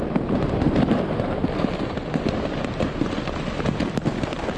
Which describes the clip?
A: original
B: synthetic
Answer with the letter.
A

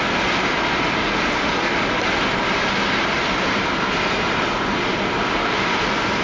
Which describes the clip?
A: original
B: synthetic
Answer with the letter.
A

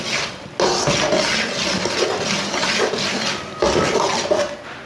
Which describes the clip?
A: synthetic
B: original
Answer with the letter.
B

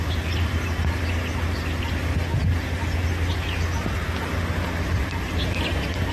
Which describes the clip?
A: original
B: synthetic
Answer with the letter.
A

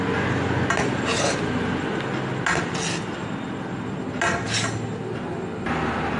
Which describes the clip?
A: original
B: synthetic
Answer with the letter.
A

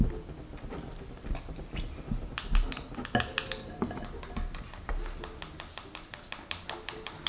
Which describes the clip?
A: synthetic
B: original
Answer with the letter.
B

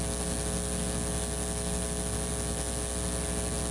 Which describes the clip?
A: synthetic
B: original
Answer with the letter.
B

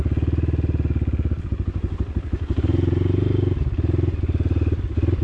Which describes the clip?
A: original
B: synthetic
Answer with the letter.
A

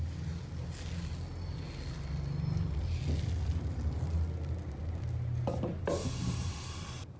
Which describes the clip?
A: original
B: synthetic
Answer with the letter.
A